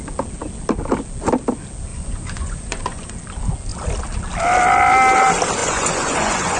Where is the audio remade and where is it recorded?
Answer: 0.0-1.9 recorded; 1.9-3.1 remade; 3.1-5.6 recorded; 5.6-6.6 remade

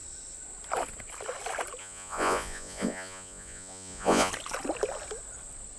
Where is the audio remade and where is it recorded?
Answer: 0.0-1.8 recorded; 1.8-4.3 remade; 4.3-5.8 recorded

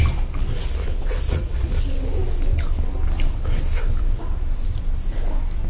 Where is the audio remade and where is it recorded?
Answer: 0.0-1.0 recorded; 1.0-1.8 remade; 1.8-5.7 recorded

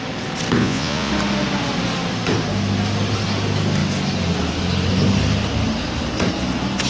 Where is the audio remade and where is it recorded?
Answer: 0.0-0.6 recorded; 0.6-1.1 remade; 1.1-6.9 recorded

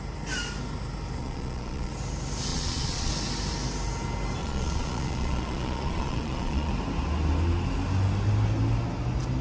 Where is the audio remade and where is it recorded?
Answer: 0.0-1.2 recorded; 1.2-1.9 remade; 1.9-2.5 recorded; 2.5-3.1 remade; 3.1-4.4 recorded; 4.4-6.7 remade; 6.7-9.4 recorded

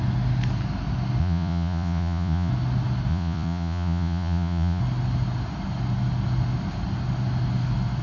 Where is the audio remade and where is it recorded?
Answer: 0.0-1.2 recorded; 1.2-2.5 remade; 2.5-3.1 recorded; 3.1-4.8 remade; 4.8-8.0 recorded

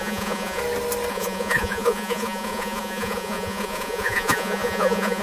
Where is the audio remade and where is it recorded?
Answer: 0.0-0.6 remade; 0.6-1.1 recorded; 1.1-5.2 remade